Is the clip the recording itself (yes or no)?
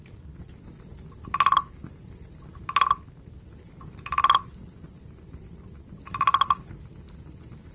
yes